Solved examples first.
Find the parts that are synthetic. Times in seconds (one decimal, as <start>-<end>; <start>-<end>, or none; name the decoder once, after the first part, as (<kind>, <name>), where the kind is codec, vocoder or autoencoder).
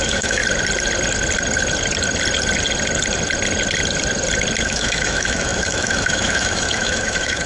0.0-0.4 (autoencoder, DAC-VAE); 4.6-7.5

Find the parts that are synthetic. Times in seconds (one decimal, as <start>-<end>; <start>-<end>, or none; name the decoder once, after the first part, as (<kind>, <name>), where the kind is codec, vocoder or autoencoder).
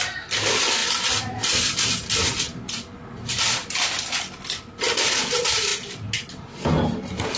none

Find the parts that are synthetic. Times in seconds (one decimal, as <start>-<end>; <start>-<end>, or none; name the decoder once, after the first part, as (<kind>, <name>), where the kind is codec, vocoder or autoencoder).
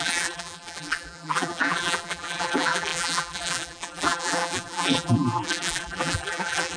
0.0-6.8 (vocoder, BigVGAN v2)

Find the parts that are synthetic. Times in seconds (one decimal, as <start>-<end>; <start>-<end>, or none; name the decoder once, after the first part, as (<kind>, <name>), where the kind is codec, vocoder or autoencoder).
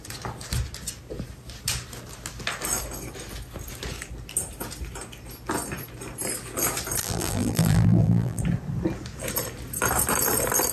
7.0-8.4 (vocoder, BigVGAN v2)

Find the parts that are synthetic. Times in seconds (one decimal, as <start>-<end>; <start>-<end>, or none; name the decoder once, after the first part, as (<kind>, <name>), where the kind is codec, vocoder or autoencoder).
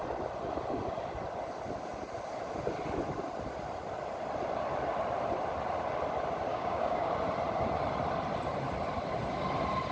6.5-7.1 (codec, DAC)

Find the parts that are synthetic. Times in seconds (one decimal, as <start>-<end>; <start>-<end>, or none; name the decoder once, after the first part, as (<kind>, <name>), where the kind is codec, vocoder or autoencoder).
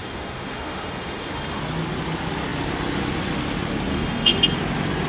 0.0-1.6 (autoencoder, DAC-VAE); 3.9-4.4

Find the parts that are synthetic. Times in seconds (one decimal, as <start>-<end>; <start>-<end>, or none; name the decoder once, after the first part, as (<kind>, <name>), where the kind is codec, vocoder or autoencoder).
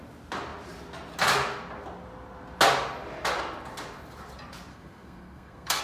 4.7-5.8 (codec, SNAC)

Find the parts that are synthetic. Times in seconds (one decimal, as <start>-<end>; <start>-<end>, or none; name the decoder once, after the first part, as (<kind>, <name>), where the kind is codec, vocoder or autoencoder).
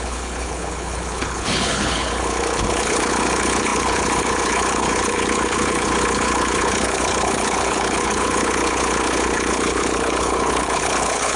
0.0-11.4 (codec, HILCodec)